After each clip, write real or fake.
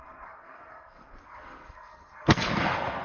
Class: fake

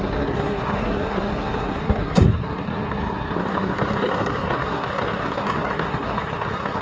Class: fake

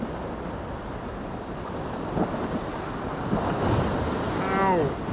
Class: real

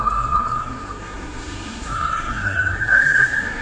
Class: fake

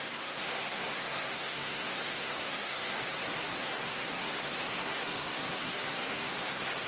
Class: fake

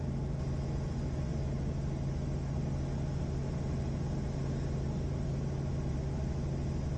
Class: real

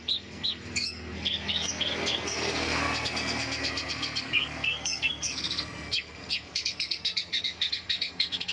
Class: fake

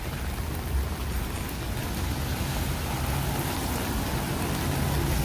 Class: real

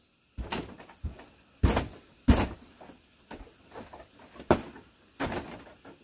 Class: real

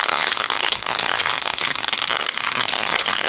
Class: fake